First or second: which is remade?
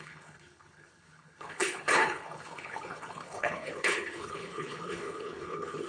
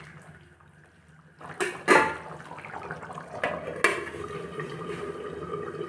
first